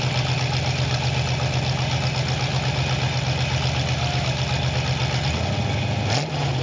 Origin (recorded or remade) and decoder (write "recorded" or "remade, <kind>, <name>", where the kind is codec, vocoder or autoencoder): recorded